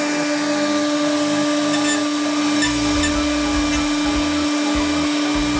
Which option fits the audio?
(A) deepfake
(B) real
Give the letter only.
B